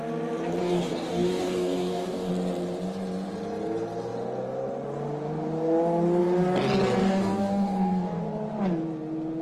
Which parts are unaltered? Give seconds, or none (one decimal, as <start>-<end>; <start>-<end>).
0.0-0.6; 2.3-7.0; 8.2-9.4